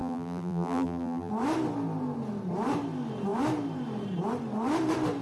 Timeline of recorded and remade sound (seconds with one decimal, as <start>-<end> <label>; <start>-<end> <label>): 0.0-1.3 remade; 1.3-5.2 recorded